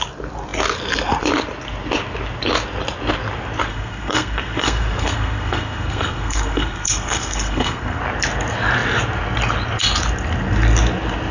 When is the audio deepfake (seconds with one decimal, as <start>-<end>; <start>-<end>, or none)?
3.7-8.0